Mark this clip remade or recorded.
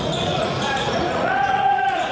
remade